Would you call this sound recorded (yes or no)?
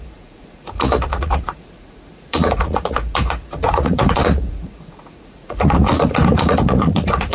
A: no